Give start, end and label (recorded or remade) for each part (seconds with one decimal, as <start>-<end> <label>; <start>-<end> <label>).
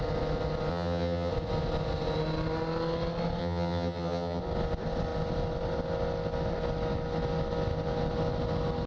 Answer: 0.0-0.7 recorded; 0.7-1.3 remade; 1.3-3.4 recorded; 3.4-4.4 remade; 4.4-8.9 recorded